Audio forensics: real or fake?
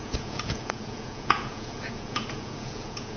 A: fake